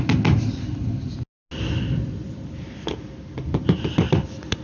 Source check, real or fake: real